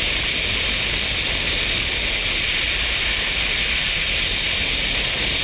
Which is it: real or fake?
real